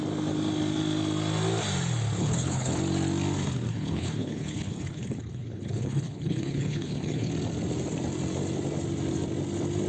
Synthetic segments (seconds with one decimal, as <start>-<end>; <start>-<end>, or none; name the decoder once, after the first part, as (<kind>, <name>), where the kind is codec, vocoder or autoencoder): 2.2-2.8 (codec, HILCodec); 3.7-7.3

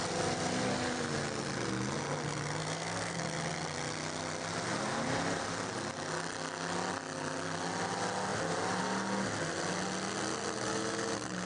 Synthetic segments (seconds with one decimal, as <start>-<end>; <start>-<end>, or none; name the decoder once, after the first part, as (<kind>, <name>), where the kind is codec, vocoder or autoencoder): 2.6-3.2 (codec, SNAC)

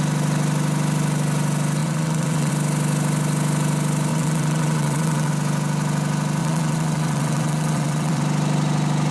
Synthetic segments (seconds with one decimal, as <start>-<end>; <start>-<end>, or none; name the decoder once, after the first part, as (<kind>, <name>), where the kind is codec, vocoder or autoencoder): 1.8-2.5 (vocoder, WaveNeXt); 4.1-5.3; 6.4-8.2

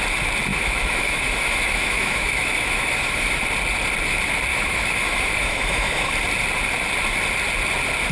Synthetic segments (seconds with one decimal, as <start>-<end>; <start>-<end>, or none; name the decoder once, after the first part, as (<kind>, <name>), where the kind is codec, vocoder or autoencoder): 0.5-3.4 (autoencoder, DAC-VAE); 4.5-6.1